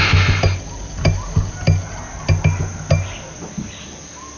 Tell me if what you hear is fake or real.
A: real